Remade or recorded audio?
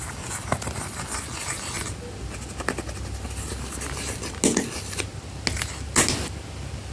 recorded